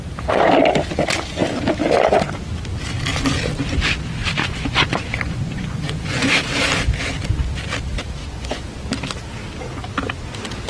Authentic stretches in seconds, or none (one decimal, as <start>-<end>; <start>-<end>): 0.0-4.4; 6.3-8.2; 8.8-10.7